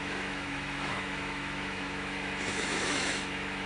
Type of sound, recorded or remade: remade